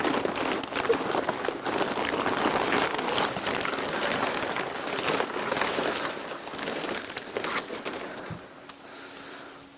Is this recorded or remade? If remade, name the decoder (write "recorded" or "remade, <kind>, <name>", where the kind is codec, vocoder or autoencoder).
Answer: recorded